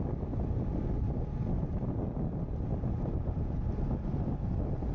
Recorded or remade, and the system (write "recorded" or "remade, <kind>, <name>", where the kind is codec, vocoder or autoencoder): recorded